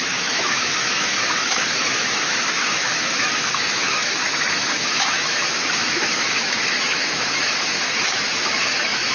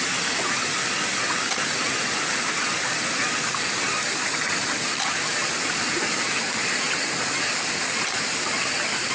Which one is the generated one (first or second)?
first